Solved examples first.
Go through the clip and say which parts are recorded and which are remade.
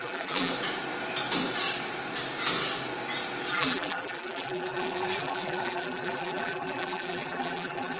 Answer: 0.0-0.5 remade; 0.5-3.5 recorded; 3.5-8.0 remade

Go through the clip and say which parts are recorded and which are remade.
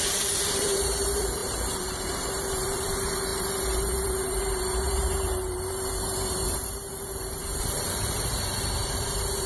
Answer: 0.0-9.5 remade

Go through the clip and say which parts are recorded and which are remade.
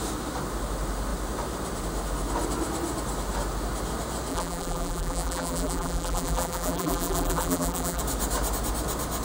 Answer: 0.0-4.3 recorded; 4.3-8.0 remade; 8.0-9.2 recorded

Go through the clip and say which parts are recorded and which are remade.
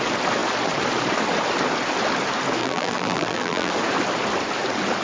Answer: 0.0-2.6 recorded; 2.6-3.7 remade; 3.7-5.0 recorded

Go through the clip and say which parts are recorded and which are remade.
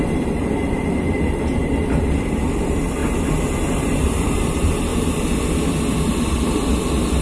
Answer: 0.0-3.0 remade; 3.0-3.8 recorded; 3.8-4.9 remade; 4.9-6.2 recorded; 6.2-7.2 remade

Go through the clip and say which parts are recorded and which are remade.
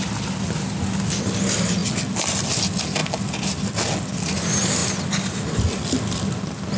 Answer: 0.0-6.8 recorded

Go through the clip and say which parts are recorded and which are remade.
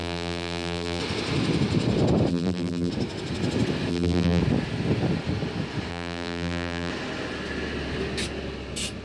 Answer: 0.0-1.0 remade; 1.0-2.3 recorded; 2.3-2.9 remade; 2.9-3.9 recorded; 3.9-4.4 remade; 4.4-5.9 recorded; 5.9-6.9 remade; 6.9-9.0 recorded